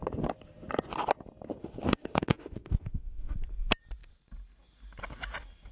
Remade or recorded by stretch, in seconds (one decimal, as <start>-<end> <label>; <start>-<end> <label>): 0.0-1.6 recorded; 1.6-3.4 remade; 3.4-5.7 recorded